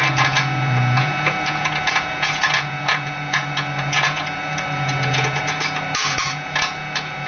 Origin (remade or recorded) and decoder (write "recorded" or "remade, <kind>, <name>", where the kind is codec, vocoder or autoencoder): remade, vocoder, Vocos